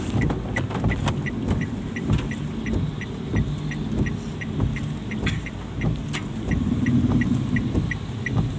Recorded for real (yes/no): yes